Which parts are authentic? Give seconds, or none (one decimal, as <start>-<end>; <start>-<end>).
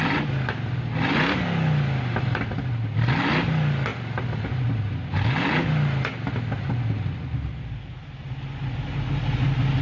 0.0-9.8